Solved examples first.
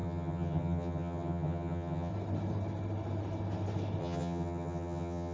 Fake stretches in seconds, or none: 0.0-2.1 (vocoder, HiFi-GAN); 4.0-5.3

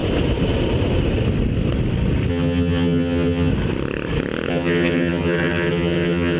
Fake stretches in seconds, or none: 2.3-3.5 (vocoder, HiFi-GAN); 4.5-6.4

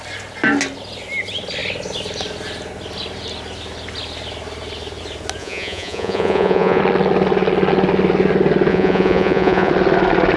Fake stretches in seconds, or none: 5.4-6.8 (vocoder, Vocos); 8.7-9.7

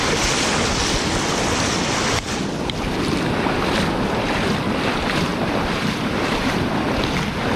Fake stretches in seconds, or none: 5.3-6.7 (vocoder, BigVGAN v2)

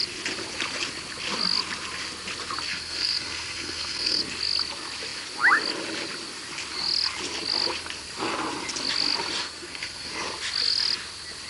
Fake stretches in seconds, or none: 2.7-4.2 (codec, SNAC); 9.4-10.1